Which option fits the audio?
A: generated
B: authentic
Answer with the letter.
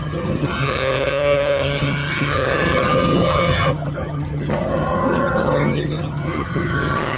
A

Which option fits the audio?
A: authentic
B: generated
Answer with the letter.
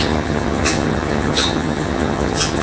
B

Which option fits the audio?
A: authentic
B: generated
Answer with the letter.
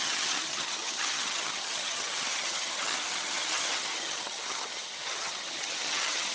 B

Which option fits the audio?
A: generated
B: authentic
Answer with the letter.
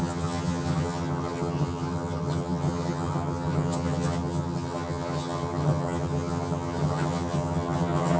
A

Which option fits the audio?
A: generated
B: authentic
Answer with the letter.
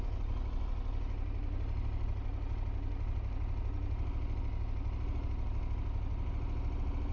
B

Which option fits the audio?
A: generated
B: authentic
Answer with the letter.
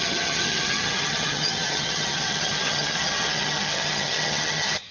A